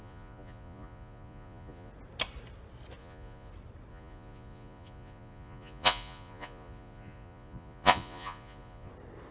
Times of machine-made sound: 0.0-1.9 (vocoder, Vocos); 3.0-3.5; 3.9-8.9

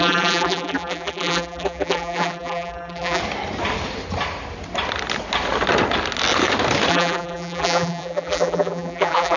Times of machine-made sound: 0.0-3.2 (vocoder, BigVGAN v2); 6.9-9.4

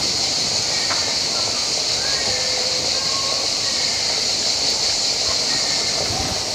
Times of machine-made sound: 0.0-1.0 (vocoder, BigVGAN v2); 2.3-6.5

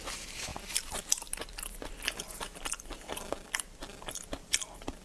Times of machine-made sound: 0.0-0.5 (vocoder, BigVGAN v2); 2.2-5.0

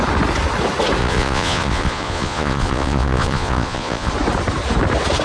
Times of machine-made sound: 1.0-4.1 (vocoder, Vocos)

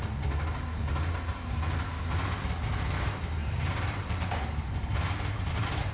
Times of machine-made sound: 3.4-5.9 (vocoder, BigVGAN v2)